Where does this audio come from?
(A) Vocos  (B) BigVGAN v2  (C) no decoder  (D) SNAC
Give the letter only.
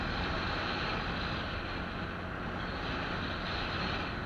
C